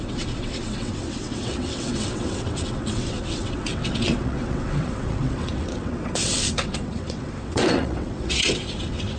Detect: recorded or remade remade